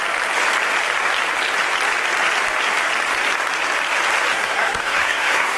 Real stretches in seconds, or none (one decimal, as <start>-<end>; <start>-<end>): 0.0-4.3